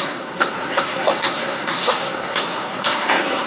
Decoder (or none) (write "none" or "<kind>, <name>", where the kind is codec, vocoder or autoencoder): codec, SNAC